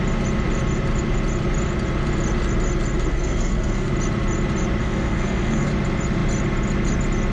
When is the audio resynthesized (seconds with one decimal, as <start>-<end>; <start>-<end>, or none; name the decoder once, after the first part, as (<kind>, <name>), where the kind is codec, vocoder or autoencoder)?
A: 3.1-3.9 (codec, SNAC); 4.8-5.7